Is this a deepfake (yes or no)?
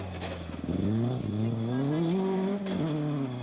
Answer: no